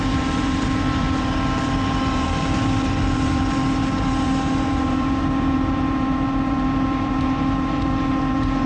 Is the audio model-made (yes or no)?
yes